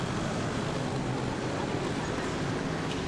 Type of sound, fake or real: real